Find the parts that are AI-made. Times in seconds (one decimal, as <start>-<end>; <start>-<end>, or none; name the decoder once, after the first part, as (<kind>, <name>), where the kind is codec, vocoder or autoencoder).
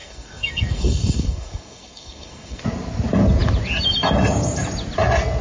0.0-2.6 (codec, SNAC)